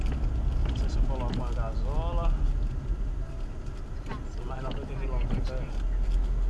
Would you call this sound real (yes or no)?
yes